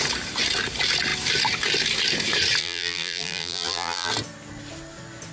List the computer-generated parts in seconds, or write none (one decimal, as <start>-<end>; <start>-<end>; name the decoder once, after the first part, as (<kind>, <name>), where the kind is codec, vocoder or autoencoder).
2.6-4.1 (vocoder, BigVGAN v2)

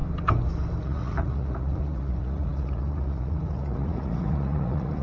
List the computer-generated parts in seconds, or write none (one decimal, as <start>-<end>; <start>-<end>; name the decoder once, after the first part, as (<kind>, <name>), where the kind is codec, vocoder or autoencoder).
0.8-5.0 (vocoder, Vocos)

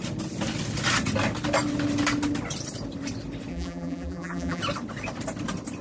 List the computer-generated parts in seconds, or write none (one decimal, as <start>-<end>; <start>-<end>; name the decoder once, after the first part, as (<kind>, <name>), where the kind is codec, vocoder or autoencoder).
3.5-4.6 (vocoder, BigVGAN v2)

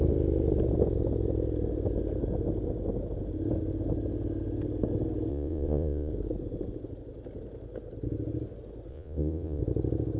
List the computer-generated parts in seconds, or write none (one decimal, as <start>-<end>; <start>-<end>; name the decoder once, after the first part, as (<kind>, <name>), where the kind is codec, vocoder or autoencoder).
5.3-6.1 (vocoder, Vocos); 8.9-9.6

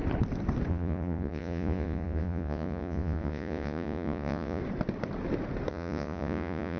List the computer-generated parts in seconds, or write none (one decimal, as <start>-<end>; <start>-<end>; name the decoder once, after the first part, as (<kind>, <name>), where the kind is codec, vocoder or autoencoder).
0.7-4.6 (vocoder, Vocos); 5.7-6.8